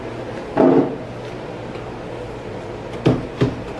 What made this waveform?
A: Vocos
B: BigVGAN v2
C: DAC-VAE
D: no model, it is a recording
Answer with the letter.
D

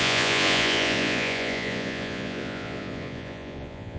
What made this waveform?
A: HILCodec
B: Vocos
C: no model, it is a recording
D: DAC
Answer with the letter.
B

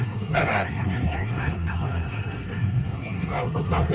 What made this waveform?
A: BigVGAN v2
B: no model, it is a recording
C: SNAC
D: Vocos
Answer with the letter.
C